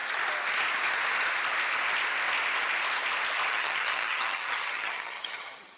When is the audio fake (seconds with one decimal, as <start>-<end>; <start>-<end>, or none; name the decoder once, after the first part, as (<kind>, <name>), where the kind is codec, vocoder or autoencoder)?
3.5-5.8 (vocoder, HiFi-GAN)